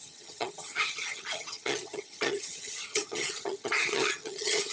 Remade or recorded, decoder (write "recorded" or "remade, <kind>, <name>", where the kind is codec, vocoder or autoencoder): remade, vocoder, HiFi-GAN